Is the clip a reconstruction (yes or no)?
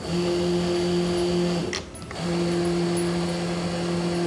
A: no